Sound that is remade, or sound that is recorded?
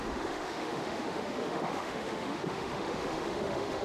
remade